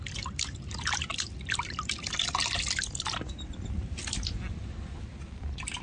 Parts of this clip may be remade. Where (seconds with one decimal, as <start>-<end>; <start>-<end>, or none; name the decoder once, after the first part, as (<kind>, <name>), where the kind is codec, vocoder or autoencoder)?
none